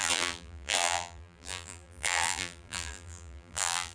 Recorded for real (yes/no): no